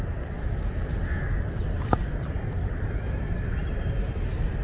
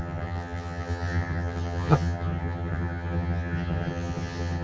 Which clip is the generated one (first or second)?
second